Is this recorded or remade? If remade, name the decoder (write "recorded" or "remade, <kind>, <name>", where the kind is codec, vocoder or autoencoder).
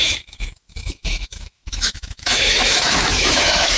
remade, autoencoder, DAC-VAE